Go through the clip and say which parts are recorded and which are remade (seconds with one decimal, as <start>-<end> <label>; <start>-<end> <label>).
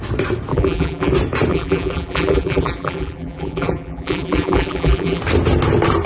0.0-0.5 recorded; 0.5-1.1 remade; 1.1-1.5 recorded; 1.5-5.2 remade; 5.2-6.1 recorded